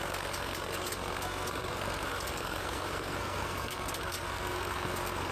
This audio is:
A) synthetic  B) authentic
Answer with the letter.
A